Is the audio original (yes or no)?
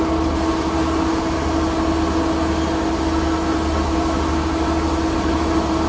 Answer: yes